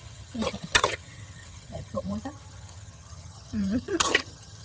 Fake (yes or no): yes